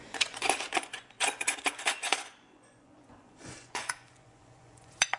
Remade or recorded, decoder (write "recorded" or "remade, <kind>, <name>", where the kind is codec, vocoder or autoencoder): remade, vocoder, Vocos